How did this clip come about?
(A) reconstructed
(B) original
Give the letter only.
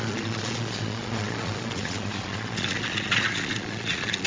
A